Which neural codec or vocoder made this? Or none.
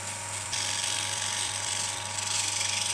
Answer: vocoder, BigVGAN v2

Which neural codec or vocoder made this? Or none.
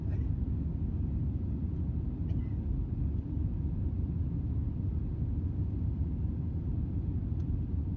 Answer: none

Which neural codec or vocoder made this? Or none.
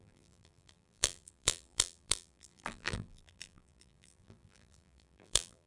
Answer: vocoder, BigVGAN v2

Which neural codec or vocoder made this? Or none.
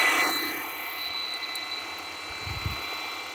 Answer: none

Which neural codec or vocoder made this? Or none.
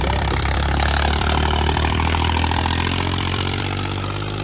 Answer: vocoder, BigVGAN v2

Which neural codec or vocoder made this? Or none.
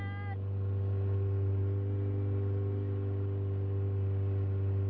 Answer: none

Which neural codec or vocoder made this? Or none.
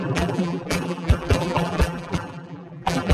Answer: vocoder, BigVGAN v2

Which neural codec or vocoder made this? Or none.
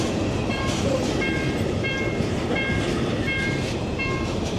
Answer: vocoder, BigVGAN v2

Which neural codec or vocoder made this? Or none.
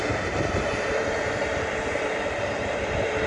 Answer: vocoder, BigVGAN v2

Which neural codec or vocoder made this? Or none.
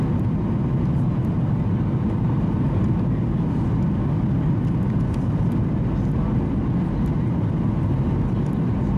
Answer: none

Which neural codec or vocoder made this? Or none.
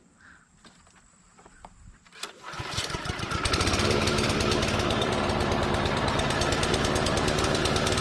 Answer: vocoder, BigVGAN v2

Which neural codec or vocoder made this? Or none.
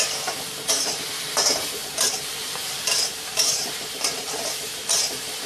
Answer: vocoder, BigVGAN v2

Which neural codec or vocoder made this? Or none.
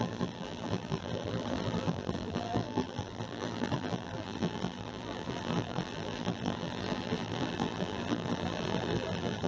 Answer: vocoder, BigVGAN v2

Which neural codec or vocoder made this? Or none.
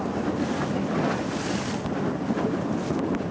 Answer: none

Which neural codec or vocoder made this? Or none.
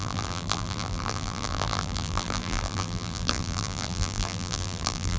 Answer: vocoder, BigVGAN v2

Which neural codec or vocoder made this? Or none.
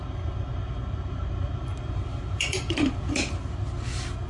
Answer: vocoder, BigVGAN v2